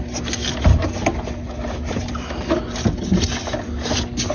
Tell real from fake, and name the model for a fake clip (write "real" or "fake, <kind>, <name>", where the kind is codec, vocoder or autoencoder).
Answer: real